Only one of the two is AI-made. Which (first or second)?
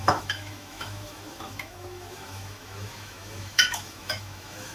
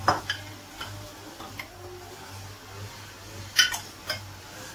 first